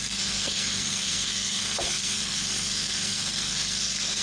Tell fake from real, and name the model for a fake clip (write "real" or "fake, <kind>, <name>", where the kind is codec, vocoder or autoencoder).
fake, codec, SNAC